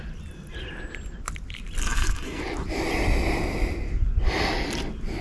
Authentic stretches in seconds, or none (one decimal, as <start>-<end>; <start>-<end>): 0.0-1.8; 2.4-5.2